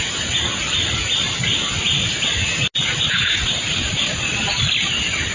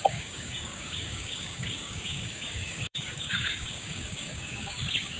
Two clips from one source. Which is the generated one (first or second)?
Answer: second